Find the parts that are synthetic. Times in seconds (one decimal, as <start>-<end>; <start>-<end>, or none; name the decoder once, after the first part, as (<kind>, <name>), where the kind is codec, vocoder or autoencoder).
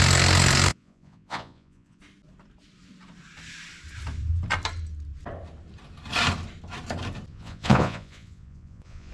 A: 0.7-2.0 (vocoder, Vocos); 7.3-9.1